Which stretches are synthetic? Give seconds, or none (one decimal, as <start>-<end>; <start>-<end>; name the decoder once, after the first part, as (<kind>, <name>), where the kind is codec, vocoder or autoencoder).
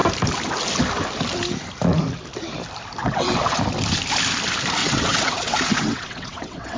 3.0-3.6 (vocoder, WaveNeXt); 4.8-6.8